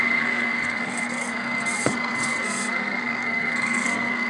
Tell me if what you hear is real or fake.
fake